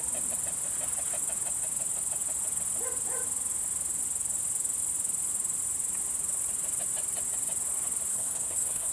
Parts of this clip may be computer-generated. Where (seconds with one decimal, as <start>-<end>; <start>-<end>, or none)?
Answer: 8.1-8.9